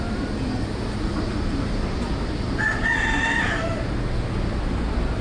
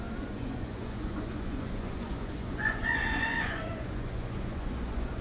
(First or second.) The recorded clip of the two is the first